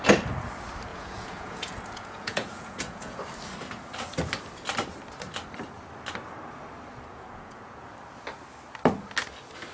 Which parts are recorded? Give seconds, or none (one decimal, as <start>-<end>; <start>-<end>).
0.0-0.9; 3.2-7.1; 7.9-9.7